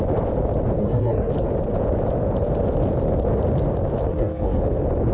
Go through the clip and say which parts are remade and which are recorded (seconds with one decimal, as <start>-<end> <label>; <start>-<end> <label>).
0.0-0.8 recorded; 0.8-1.3 remade; 1.3-4.1 recorded; 4.1-4.6 remade; 4.6-5.1 recorded